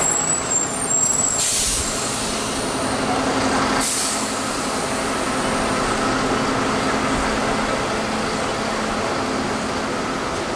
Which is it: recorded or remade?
recorded